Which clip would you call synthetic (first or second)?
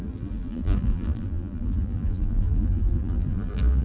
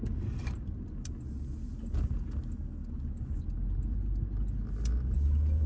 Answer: first